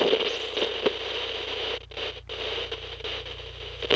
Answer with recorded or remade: recorded